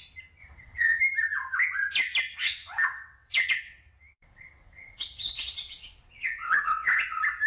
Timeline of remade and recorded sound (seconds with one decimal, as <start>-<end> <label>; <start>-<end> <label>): 0.0-0.4 recorded; 0.4-1.0 remade; 1.0-2.4 recorded; 2.4-6.9 remade; 6.9-7.5 recorded